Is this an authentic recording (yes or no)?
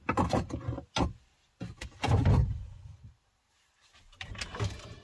yes